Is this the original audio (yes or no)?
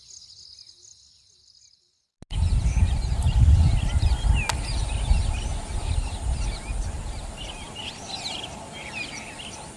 yes